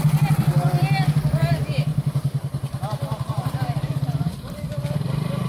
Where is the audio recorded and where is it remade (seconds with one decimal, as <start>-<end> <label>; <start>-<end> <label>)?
0.0-1.9 recorded; 1.9-5.5 remade